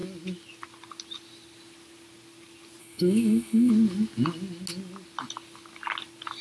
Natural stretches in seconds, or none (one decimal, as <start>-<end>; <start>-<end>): 0.0-2.8; 3.7-6.4